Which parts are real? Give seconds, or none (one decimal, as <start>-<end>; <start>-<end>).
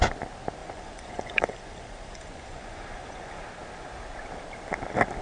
0.0-0.6; 3.4-5.2